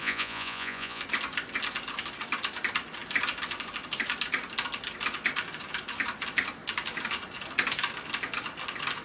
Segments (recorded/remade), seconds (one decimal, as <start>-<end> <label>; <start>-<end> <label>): 0.0-1.0 remade; 1.0-9.0 recorded